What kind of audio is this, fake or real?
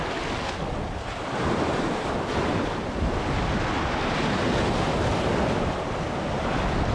real